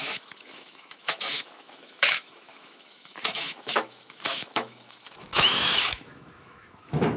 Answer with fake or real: fake